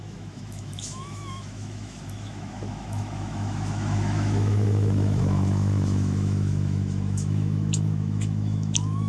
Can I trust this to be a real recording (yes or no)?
no